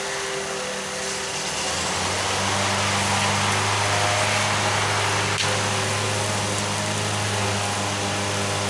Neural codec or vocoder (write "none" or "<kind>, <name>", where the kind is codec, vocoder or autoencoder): none